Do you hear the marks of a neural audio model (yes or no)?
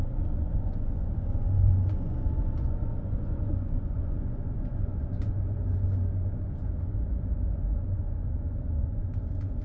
yes